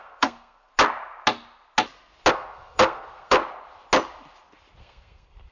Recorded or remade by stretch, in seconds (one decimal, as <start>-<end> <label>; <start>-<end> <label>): 0.0-0.7 remade; 0.7-2.3 recorded; 2.3-3.4 remade; 3.4-4.8 recorded; 4.8-5.5 remade

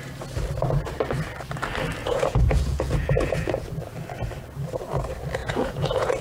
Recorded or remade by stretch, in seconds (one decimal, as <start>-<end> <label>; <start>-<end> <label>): 0.0-2.0 recorded; 2.0-3.7 remade; 3.7-5.4 recorded; 5.4-6.2 remade

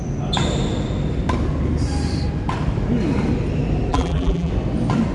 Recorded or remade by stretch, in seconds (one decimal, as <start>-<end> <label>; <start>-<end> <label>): 0.0-3.9 recorded; 3.9-4.5 remade; 4.5-5.1 recorded

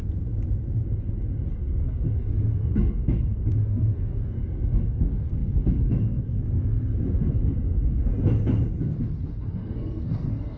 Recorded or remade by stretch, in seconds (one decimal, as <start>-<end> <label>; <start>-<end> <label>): 0.0-1.5 recorded; 1.5-6.9 remade; 6.9-7.6 recorded; 7.6-8.1 remade; 8.1-9.3 recorded; 9.3-10.6 remade

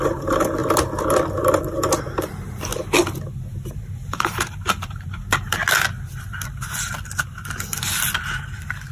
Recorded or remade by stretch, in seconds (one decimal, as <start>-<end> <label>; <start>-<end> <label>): 0.0-0.6 remade; 0.6-2.0 recorded; 2.0-2.7 remade; 2.7-3.7 recorded; 3.7-5.6 remade; 5.6-8.4 recorded; 8.4-8.9 remade

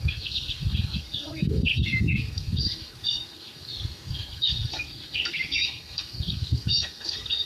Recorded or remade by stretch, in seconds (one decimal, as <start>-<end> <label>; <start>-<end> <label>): 0.0-7.5 remade

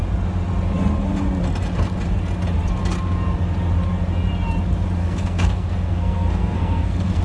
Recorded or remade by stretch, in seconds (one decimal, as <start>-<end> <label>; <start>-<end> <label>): 0.0-5.0 recorded; 5.0-7.2 remade

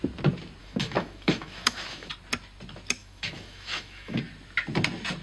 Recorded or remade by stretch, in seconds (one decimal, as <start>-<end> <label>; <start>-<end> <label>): 0.0-0.6 recorded; 0.6-2.1 remade; 2.1-3.0 recorded; 3.0-4.2 remade; 4.2-5.2 recorded